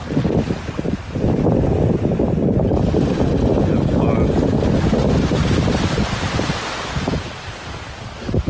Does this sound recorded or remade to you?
recorded